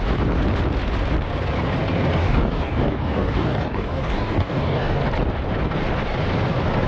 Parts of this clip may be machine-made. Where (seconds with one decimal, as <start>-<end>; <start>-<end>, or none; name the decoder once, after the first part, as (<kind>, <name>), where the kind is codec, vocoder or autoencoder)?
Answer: 2.2-5.0 (codec, DAC)